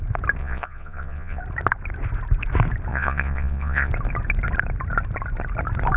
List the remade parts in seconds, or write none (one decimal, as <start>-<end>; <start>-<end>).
0.4-1.4; 2.9-3.9